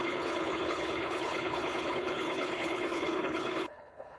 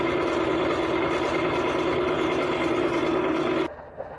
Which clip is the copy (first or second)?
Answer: first